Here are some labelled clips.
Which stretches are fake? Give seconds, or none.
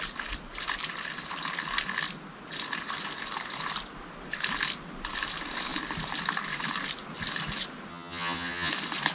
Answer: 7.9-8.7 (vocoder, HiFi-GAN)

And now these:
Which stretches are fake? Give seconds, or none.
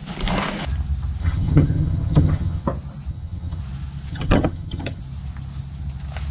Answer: 1.2-2.6 (vocoder, HiFi-GAN); 3.1-3.6; 4.1-5.0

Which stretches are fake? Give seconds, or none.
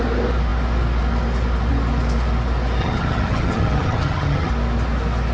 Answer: 2.8-4.5 (vocoder, HiFi-GAN)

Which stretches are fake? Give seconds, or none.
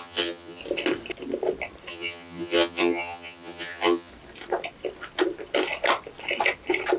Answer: 0.0-0.6 (vocoder, HiFi-GAN); 1.9-4.1